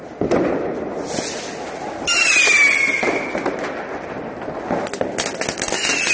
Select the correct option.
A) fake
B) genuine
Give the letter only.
B